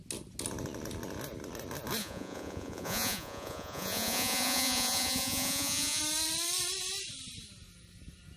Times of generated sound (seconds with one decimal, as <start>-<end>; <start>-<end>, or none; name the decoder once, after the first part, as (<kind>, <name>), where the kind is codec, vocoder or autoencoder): 2.0-6.0 (vocoder, Vocos)